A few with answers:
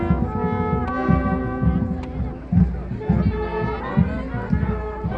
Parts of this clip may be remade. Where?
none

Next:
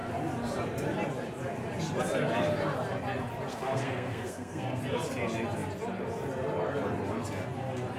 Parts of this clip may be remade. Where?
3.5-4.8 (codec, SNAC)

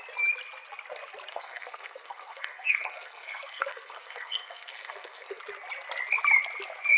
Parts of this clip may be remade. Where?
1.3-5.4 (codec, SNAC)

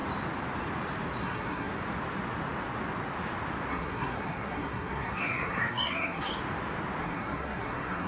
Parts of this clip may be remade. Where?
1.2-1.7 (codec, SNAC); 3.7-6.3; 7.0-8.1

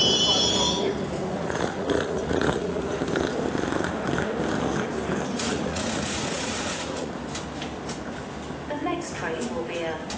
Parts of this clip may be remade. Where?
1.4-2.8 (vocoder, Vocos); 5.3-7.1

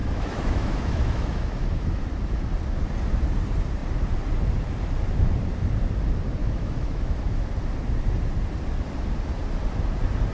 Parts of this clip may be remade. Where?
0.0-2.0 (autoencoder, DAC-VAE); 6.4-7.5